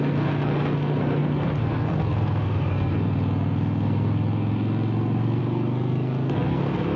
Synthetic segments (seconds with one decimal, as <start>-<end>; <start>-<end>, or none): 0.0-7.0